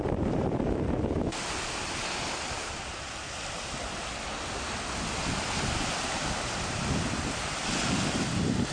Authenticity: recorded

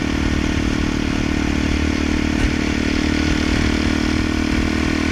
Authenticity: recorded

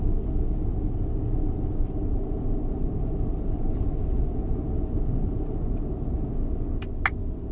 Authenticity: recorded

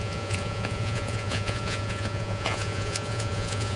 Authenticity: remade